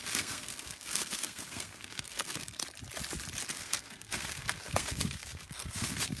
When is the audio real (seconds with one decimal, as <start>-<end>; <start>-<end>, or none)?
2.6-3.5